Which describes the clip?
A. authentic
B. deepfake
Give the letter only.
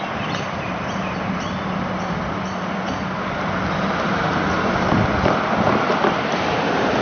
B